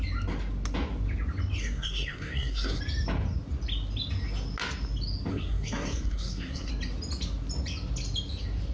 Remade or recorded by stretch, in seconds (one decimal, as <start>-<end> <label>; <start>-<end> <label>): 0.0-1.6 recorded; 1.6-2.8 remade; 2.8-5.3 recorded; 5.3-6.7 remade; 6.7-8.7 recorded